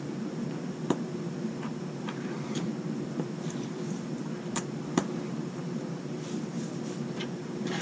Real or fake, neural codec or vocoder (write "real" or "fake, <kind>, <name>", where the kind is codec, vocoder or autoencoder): fake, vocoder, BigVGAN v2